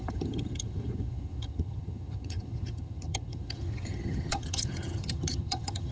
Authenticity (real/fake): fake